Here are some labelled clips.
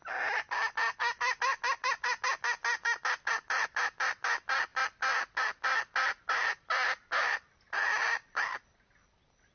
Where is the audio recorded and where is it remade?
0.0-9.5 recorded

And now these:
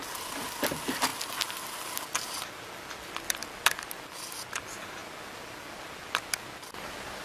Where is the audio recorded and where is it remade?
0.0-7.2 recorded

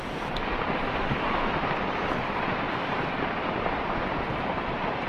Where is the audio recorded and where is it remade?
0.0-2.8 remade; 2.8-5.1 recorded

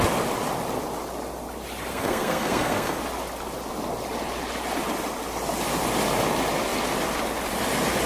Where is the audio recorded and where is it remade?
0.0-1.9 recorded; 1.9-3.0 remade; 3.0-8.1 recorded

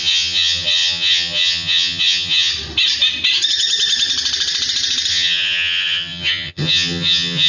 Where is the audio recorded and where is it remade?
0.0-2.5 remade; 2.5-5.1 recorded; 5.1-7.5 remade

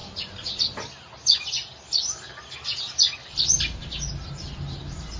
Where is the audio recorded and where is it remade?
0.0-5.2 recorded